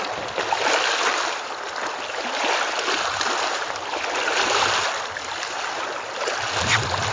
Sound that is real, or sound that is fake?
real